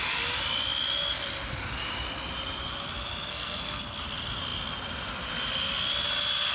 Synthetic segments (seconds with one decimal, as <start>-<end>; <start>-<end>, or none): 3.3-3.8